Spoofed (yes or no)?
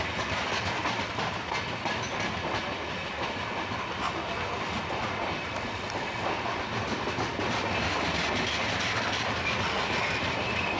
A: no